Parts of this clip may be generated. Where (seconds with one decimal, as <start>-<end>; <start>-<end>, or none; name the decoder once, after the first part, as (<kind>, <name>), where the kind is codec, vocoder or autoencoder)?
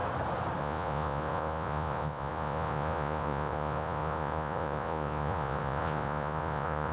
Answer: 0.6-6.9 (vocoder, Vocos)